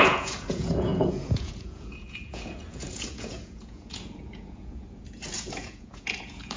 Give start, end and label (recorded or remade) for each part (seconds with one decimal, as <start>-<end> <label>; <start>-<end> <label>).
0.0-6.6 remade